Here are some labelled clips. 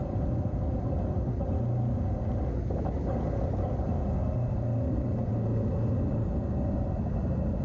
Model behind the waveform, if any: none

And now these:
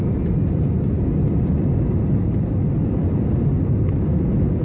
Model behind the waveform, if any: none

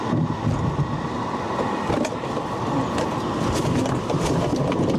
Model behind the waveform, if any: none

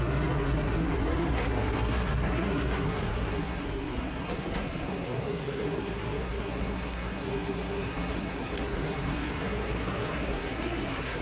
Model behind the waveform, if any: codec, SNAC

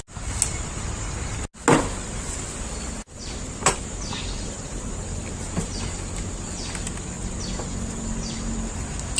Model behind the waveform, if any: none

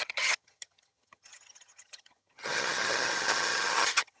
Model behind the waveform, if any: vocoder, HiFi-GAN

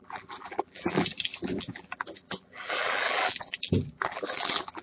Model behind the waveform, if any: vocoder, BigVGAN v2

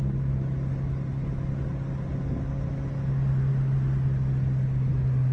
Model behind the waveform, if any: none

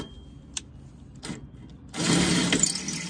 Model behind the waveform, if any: none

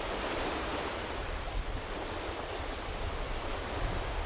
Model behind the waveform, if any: none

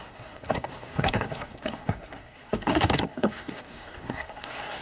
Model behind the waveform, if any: codec, SNAC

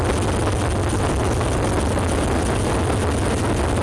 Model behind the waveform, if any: none